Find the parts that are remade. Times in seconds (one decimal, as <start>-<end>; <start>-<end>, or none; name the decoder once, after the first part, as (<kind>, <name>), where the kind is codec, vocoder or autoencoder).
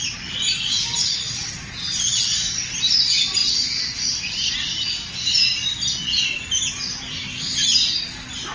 none